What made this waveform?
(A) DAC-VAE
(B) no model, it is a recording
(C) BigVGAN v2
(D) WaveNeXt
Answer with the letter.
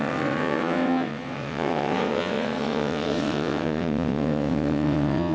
D